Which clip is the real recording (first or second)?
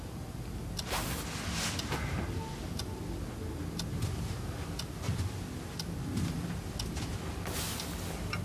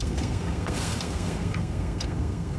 first